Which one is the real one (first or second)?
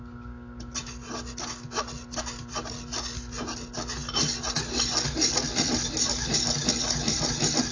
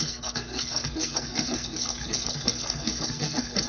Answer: first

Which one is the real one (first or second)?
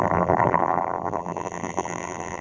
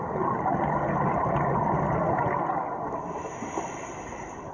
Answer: second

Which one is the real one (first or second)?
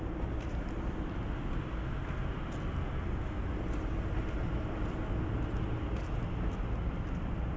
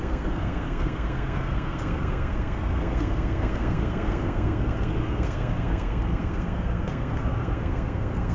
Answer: first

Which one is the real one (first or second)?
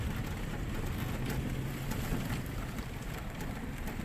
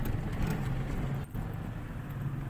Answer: second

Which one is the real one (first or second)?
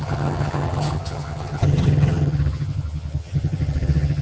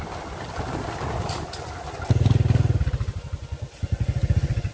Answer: second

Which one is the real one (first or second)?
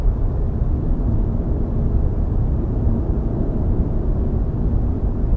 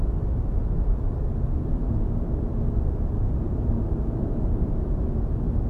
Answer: second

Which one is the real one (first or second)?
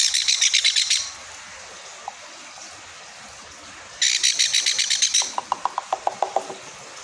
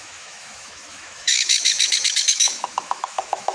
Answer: first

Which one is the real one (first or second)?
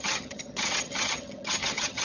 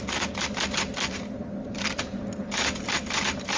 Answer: second